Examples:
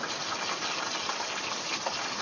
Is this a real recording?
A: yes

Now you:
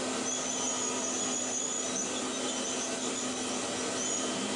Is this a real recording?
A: yes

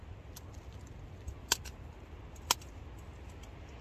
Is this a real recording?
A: yes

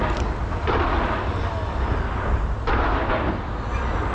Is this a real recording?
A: yes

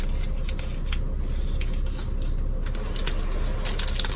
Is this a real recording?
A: yes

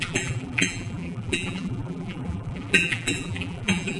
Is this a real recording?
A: no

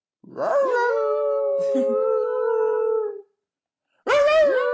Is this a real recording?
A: yes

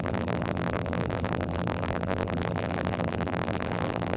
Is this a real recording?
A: no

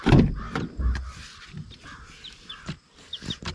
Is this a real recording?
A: yes